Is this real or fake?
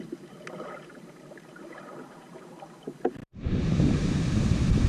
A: fake